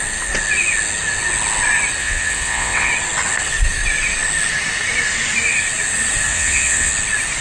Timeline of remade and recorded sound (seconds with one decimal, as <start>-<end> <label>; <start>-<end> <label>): 0.0-2.0 recorded; 2.0-2.9 remade; 2.9-6.3 recorded; 6.3-6.9 remade; 6.9-7.4 recorded

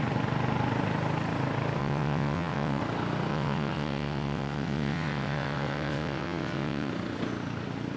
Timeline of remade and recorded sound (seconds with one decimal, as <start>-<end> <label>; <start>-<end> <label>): 0.0-1.8 recorded; 1.8-2.8 remade; 2.8-3.3 recorded; 3.3-6.9 remade; 6.9-8.0 recorded

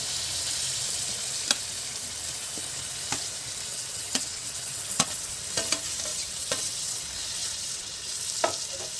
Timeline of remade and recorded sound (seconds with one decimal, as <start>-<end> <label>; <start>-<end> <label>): 0.0-3.7 recorded; 3.7-5.4 remade; 5.4-6.1 recorded; 6.1-7.0 remade; 7.0-7.4 recorded; 7.4-8.2 remade; 8.2-9.0 recorded

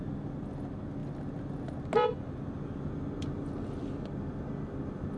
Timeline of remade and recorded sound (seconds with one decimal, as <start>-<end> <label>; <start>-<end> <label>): 0.0-5.2 recorded